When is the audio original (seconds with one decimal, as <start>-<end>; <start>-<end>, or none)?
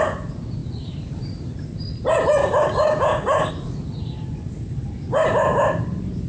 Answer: 0.0-2.4; 3.5-6.3